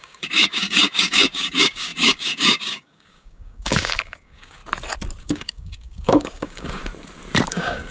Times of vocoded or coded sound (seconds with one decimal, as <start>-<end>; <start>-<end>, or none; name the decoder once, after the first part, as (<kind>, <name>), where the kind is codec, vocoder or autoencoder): 0.0-4.6 (codec, DAC); 5.2-6.8; 7.5-7.9